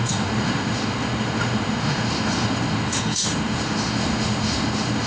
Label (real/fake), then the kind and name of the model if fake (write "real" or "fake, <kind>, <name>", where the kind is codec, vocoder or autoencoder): fake, autoencoder, DAC-VAE